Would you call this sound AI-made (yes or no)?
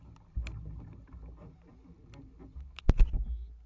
no